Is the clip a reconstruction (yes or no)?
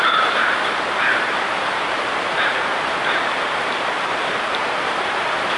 yes